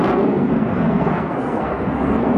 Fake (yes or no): yes